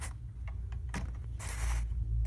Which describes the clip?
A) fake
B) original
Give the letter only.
B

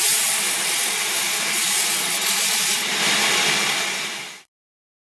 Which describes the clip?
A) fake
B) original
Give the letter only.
B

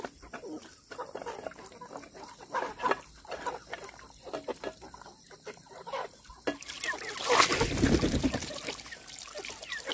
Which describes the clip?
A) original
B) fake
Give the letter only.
A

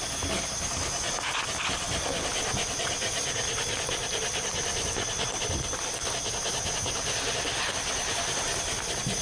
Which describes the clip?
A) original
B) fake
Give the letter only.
A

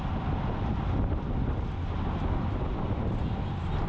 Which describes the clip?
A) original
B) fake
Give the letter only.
A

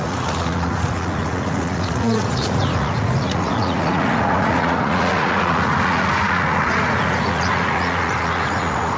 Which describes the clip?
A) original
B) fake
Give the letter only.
B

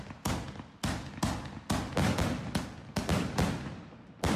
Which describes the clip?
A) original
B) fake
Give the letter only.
A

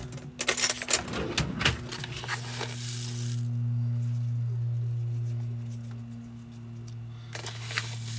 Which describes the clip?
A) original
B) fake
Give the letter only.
A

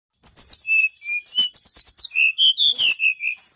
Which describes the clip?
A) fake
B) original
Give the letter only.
B